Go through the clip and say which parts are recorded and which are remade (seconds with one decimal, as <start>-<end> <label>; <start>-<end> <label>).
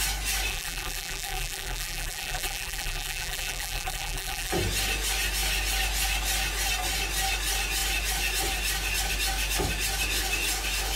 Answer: 0.0-0.5 recorded; 0.5-4.5 remade; 4.5-11.0 recorded